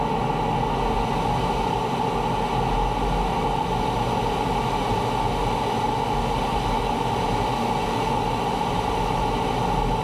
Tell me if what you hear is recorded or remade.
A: recorded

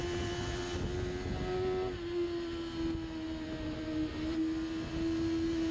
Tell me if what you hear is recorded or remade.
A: recorded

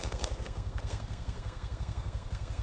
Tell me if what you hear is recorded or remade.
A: remade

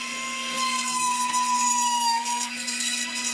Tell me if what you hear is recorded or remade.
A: remade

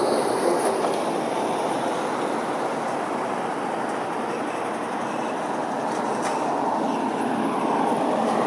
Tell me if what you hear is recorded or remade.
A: recorded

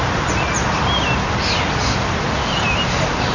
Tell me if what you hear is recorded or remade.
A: recorded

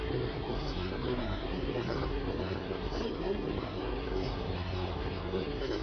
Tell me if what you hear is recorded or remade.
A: remade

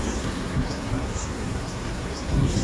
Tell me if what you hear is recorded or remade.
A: remade